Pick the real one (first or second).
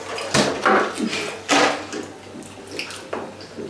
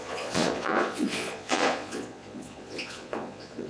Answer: first